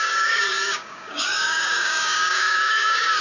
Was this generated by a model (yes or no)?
yes